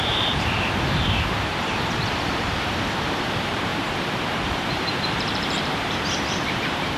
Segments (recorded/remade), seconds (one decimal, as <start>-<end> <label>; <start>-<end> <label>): 0.0-7.0 remade